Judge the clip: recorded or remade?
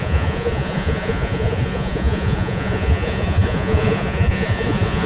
remade